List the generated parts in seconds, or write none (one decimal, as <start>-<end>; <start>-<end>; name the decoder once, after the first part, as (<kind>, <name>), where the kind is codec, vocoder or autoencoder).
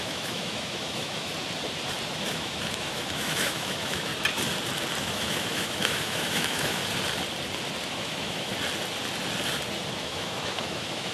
0.0-1.3 (autoencoder, DAC-VAE); 2.3-4.1; 5.0-6.8; 7.9-8.5; 10.0-11.1